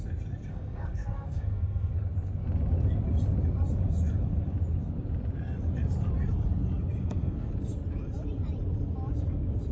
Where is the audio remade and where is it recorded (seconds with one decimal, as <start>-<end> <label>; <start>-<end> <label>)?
0.0-0.5 recorded; 0.5-1.9 remade; 1.9-7.0 recorded; 7.0-7.5 remade; 7.5-9.7 recorded